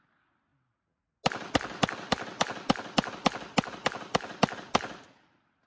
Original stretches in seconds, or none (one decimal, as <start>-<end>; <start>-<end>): 0.0-5.7